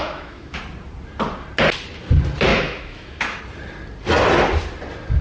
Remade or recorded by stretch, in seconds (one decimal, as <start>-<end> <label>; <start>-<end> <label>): 0.0-0.6 remade; 0.6-2.5 recorded; 2.5-3.4 remade; 3.4-5.2 recorded

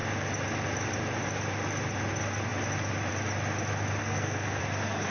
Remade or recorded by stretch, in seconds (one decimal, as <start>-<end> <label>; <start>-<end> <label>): 0.0-4.0 recorded; 4.0-4.6 remade; 4.6-5.1 recorded

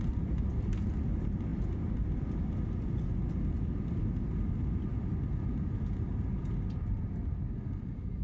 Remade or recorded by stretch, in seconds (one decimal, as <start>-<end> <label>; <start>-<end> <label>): 0.0-8.2 recorded

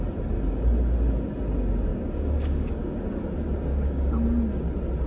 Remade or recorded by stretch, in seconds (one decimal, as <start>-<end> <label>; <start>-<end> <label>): 0.0-1.9 recorded; 1.9-3.0 remade; 3.0-3.7 recorded; 3.7-4.3 remade; 4.3-5.1 recorded

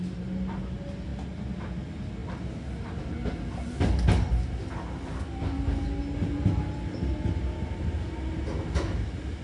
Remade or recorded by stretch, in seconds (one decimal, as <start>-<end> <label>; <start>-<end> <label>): 0.0-9.4 recorded

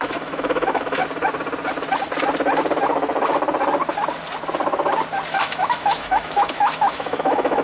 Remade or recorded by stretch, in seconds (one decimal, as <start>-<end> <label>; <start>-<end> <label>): 0.0-1.0 remade; 1.0-5.3 recorded; 5.3-7.6 remade

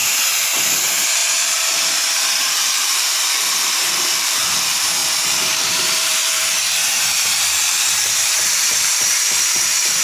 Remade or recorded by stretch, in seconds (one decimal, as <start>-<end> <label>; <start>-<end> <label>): 0.0-0.7 recorded; 0.7-5.0 remade; 5.0-5.6 recorded; 5.6-10.0 remade

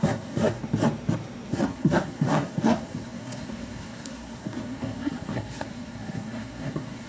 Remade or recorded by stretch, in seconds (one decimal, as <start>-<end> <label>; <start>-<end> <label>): 0.0-0.6 remade; 0.6-1.5 recorded; 1.5-7.1 remade